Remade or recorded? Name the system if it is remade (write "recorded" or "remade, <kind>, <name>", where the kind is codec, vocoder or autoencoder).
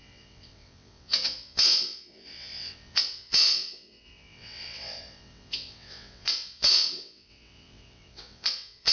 remade, vocoder, WaveNeXt